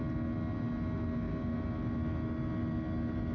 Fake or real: real